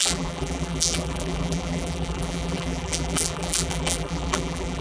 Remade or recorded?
remade